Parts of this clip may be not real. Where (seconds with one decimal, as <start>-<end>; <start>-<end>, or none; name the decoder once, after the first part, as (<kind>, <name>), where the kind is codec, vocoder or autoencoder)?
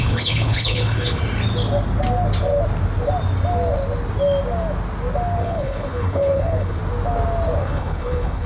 0.0-1.2 (codec, HILCodec); 5.4-6.8; 7.6-8.5